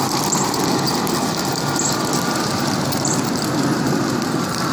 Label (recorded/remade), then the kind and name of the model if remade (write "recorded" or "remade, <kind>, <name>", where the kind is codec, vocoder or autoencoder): remade, vocoder, BigVGAN v2